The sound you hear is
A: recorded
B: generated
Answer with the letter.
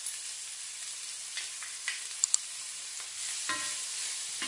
A